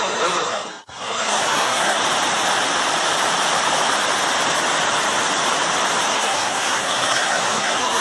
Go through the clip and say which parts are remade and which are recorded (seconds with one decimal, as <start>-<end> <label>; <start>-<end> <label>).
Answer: 0.0-2.0 remade; 2.0-6.1 recorded; 6.1-8.0 remade